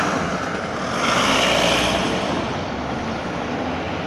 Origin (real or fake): real